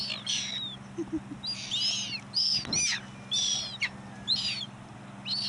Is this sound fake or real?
real